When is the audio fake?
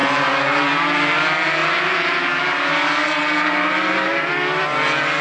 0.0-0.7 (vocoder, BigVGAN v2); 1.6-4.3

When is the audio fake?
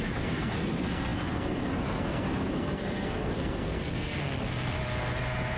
0.0-4.8 (codec, SNAC)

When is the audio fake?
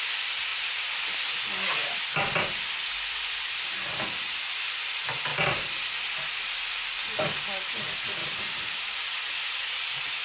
0.5-1.3 (vocoder, BigVGAN v2); 5.3-6.7; 8.2-9.1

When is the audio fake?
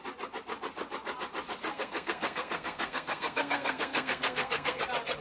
1.7-4.8 (codec, SNAC)